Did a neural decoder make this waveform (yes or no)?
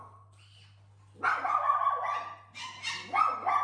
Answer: no